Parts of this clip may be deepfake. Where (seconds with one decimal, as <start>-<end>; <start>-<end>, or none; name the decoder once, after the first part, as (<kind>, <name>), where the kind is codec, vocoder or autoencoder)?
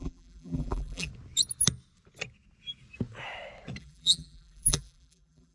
0.0-1.1 (vocoder, BigVGAN v2); 3.8-5.5